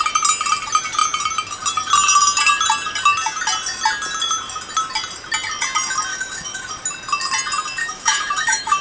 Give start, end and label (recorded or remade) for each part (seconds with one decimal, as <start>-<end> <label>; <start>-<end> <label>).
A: 0.0-6.1 recorded; 6.1-6.7 remade; 6.7-7.8 recorded; 7.8-8.8 remade